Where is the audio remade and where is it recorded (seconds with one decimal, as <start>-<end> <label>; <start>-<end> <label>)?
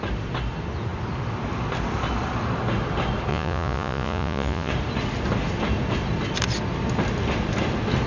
0.0-3.3 recorded; 3.3-4.7 remade; 4.7-8.1 recorded